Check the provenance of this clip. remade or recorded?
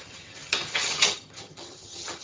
remade